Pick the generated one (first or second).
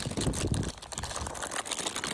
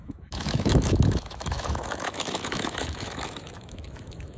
second